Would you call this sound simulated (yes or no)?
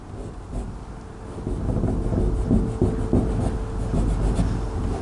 no